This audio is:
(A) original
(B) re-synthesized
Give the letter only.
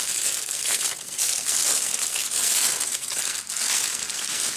B